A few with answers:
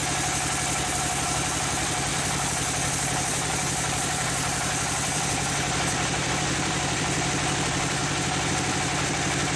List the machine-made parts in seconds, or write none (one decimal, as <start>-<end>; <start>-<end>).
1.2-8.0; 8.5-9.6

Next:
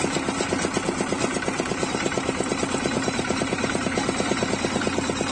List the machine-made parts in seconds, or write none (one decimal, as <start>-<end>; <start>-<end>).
1.3-4.5

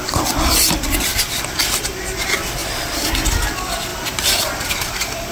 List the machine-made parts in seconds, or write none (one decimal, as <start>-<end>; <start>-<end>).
3.9-4.7